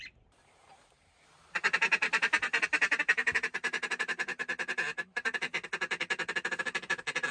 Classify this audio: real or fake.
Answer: real